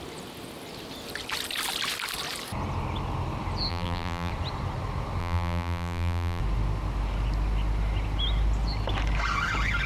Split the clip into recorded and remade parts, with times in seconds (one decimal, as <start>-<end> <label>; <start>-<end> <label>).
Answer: 0.0-3.7 recorded; 3.7-4.3 remade; 4.3-5.2 recorded; 5.2-6.4 remade; 6.4-9.9 recorded